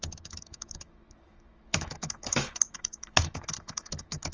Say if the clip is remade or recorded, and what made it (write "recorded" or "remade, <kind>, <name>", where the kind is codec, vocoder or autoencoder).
remade, autoencoder, DAC-VAE